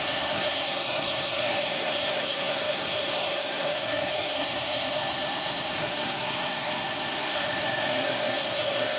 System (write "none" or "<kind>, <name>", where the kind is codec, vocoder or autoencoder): codec, SNAC